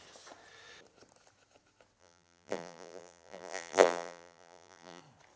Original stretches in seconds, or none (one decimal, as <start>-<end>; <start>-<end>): 0.0-2.0; 5.0-5.4